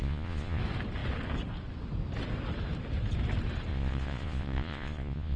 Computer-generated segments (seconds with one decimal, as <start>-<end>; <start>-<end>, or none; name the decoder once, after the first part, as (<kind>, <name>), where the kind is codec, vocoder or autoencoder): 0.0-0.6 (vocoder, Vocos); 3.7-5.4